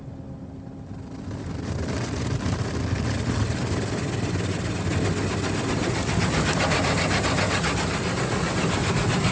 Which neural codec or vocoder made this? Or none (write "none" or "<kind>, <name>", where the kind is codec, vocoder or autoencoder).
none